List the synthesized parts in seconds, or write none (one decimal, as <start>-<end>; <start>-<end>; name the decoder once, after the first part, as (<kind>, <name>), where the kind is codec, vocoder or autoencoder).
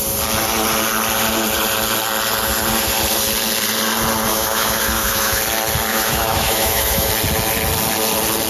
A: 4.3-5.4 (autoencoder, DAC-VAE); 5.9-7.1